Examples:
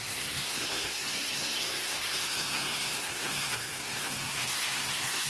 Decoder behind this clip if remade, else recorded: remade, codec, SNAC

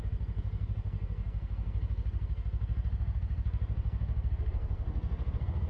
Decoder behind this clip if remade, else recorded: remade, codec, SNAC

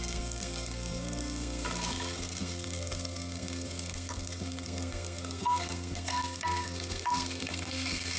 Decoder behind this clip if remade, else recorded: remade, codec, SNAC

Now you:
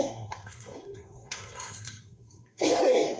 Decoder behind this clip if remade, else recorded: remade, codec, SNAC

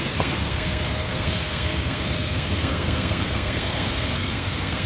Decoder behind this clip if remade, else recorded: remade, codec, SNAC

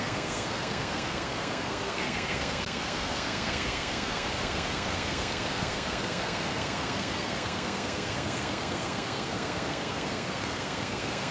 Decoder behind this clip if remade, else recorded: remade, codec, SNAC